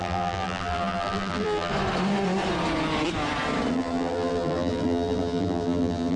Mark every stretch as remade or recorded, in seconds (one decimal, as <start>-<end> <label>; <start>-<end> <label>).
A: 0.0-1.7 remade; 1.7-3.7 recorded; 3.7-6.2 remade